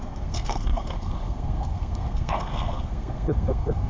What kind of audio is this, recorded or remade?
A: remade